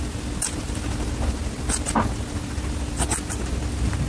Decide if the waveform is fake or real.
real